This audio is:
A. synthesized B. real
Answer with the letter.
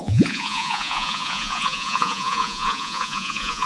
A